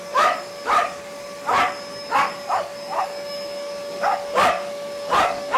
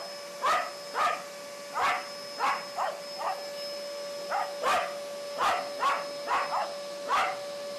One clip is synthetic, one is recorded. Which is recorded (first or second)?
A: second